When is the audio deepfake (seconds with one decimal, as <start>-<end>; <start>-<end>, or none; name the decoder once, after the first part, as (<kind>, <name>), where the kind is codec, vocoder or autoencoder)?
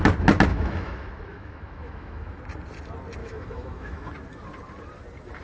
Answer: 0.5-2.4 (autoencoder, DAC-VAE); 3.2-4.1